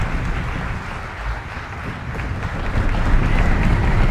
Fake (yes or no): no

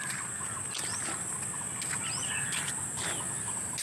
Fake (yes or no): no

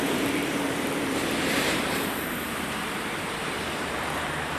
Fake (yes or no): yes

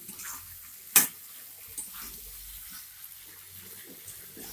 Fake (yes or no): no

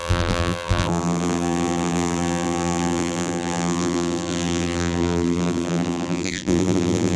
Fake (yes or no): yes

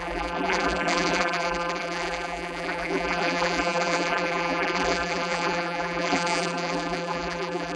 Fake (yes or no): yes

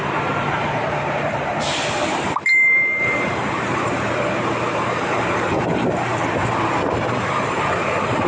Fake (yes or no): yes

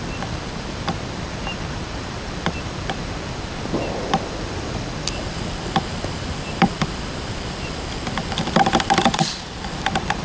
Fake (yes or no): yes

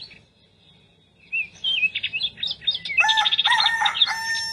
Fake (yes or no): no